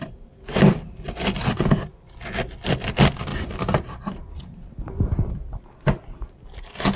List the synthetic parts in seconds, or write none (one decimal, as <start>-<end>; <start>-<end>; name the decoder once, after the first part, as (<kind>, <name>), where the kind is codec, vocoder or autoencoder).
3.3-4.7 (vocoder, BigVGAN v2)